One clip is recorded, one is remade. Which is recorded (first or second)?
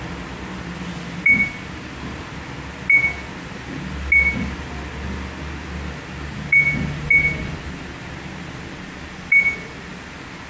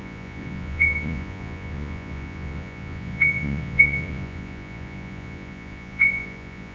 first